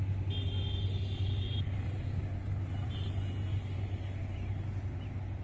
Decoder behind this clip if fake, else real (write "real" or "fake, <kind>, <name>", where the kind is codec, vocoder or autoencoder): real